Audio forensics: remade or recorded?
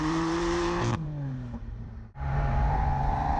remade